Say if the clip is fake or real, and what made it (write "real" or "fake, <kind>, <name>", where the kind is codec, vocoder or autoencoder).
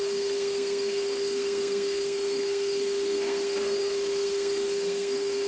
fake, codec, SNAC